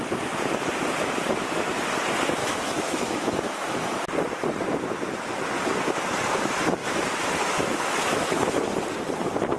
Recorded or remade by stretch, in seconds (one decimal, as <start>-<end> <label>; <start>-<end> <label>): 0.0-2.4 recorded; 2.4-3.9 remade; 3.9-6.8 recorded; 6.8-8.7 remade; 8.7-9.6 recorded